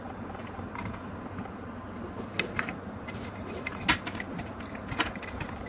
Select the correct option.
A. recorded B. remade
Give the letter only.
A